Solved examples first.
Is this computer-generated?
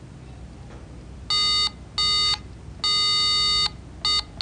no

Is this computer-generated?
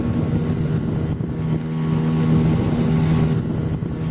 no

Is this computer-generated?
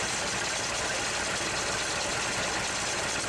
no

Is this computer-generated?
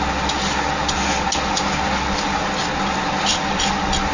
no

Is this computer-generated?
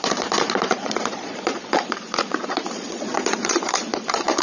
yes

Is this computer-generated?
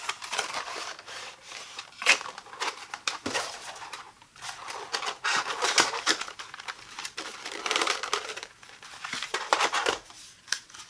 yes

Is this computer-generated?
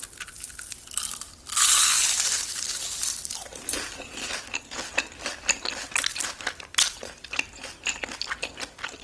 no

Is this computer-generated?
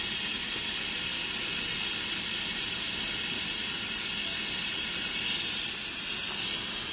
no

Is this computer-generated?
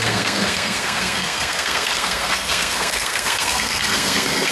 yes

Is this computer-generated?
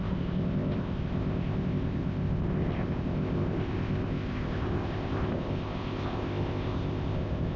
yes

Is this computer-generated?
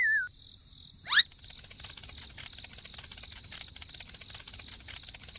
no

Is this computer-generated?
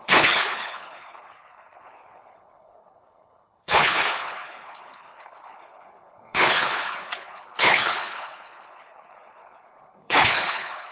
yes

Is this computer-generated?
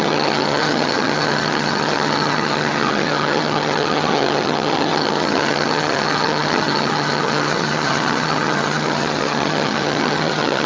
yes